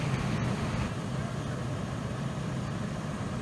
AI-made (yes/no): no